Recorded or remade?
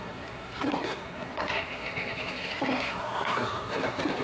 remade